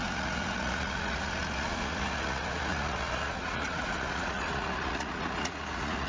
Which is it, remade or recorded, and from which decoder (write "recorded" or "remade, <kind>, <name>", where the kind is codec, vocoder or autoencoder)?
remade, vocoder, Vocos